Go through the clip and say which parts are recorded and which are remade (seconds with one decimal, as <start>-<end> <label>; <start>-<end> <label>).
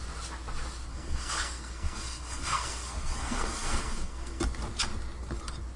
0.0-0.9 recorded; 0.9-4.4 remade; 4.4-5.8 recorded